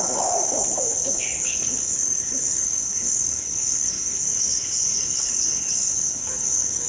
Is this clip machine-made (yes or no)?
yes